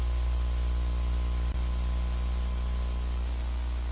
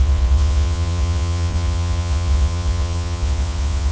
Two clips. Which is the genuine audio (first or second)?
first